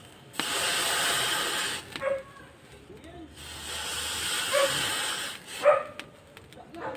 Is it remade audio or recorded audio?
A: recorded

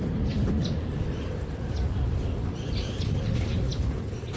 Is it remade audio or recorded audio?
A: recorded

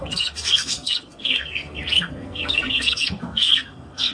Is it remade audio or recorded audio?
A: remade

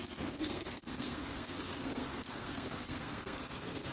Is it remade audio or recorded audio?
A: remade